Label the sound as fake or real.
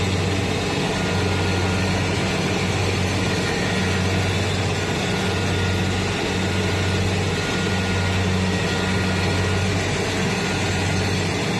real